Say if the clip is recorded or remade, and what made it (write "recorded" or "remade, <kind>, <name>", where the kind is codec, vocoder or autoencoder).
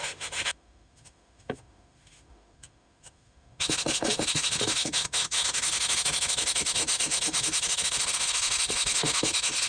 remade, autoencoder, DAC-VAE